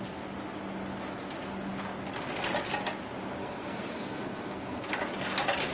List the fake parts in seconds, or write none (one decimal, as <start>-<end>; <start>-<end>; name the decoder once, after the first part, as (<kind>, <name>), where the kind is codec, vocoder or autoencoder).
3.4-4.9 (codec, SNAC)